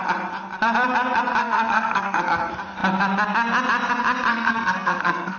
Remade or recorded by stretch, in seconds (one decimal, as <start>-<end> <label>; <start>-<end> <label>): 0.0-1.4 recorded; 1.4-2.2 remade; 2.2-4.3 recorded; 4.3-5.4 remade